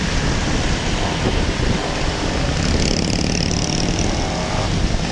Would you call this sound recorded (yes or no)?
yes